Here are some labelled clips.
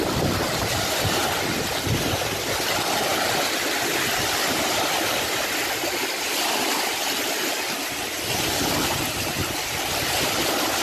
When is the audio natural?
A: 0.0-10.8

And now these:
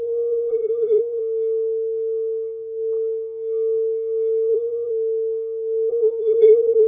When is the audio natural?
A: 1.2-4.5; 4.9-5.9

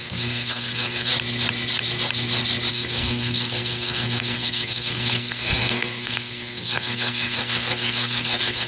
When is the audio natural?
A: 1.1-2.7

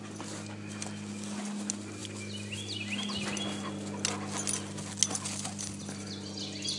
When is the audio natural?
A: 0.0-6.8

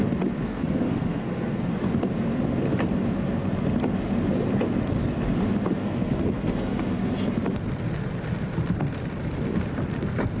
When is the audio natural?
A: 0.0-0.4; 1.6-5.8; 7.1-10.4

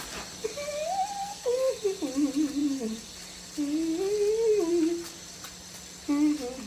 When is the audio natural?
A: 0.0-1.2; 1.7-6.7